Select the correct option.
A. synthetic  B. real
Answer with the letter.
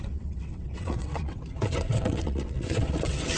A